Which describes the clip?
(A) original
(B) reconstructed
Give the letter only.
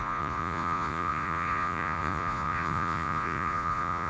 B